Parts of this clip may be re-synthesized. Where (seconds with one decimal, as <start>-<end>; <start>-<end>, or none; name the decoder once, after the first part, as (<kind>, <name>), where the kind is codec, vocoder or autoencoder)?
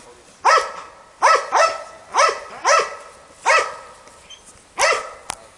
none